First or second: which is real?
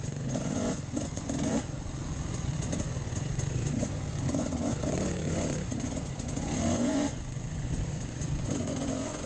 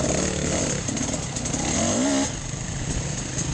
second